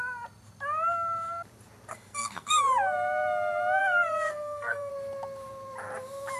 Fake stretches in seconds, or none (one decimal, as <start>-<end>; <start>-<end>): 1.9-2.6; 3.8-4.9